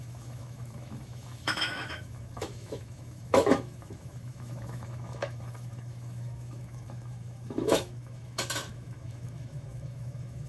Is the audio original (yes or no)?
no